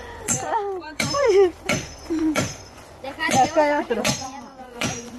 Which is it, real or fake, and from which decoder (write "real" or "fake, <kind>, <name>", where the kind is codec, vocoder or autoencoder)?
fake, vocoder, Vocos